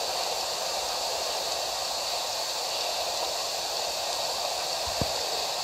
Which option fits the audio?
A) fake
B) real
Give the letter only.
B